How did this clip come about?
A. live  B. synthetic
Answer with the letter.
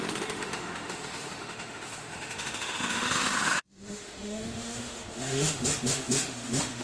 B